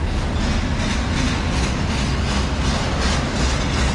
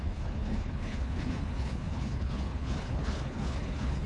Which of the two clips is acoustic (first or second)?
first